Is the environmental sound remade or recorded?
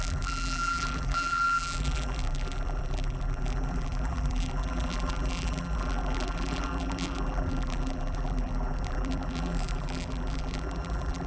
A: remade